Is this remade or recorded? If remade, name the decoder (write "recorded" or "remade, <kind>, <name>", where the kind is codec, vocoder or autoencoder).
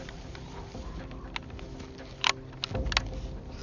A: recorded